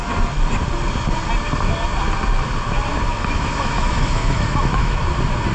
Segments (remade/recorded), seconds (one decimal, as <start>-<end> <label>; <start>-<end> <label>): 0.0-2.9 recorded; 2.9-5.0 remade; 5.0-5.5 recorded